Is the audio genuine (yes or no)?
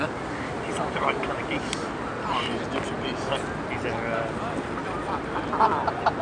yes